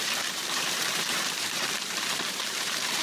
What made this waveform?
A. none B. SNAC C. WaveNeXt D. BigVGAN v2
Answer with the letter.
D